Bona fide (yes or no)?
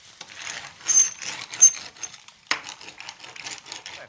no